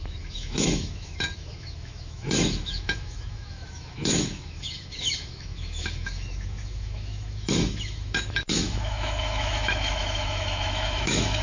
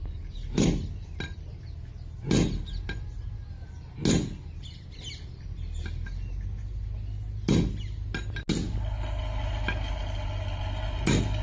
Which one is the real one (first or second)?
second